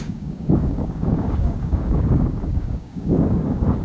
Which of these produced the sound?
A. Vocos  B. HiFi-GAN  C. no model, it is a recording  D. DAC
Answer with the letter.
D